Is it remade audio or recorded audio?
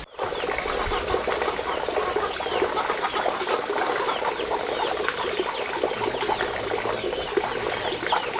recorded